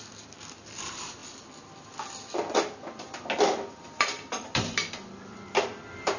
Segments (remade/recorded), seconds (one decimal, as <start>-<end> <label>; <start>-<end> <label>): 0.0-1.2 remade; 1.2-3.7 recorded; 3.7-6.2 remade